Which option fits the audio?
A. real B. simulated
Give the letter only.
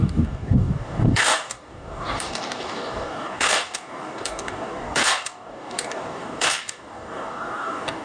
B